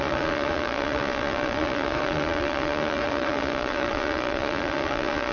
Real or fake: fake